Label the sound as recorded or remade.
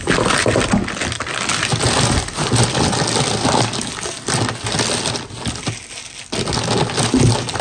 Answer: recorded